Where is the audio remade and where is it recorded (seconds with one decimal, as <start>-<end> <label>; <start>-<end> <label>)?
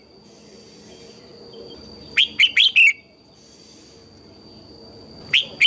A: 0.0-5.7 recorded